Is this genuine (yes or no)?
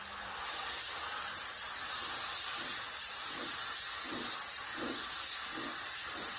yes